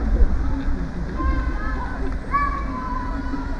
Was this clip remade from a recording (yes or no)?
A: no